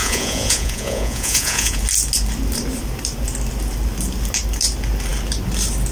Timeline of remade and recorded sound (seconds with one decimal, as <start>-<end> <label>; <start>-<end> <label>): 0.0-1.8 remade; 1.8-5.9 recorded